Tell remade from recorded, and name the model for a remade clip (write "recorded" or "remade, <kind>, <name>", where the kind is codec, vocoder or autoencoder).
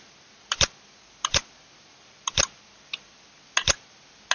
recorded